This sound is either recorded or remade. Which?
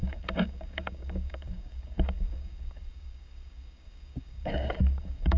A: remade